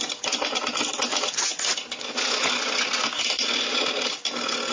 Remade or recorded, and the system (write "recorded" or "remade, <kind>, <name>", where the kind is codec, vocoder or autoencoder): recorded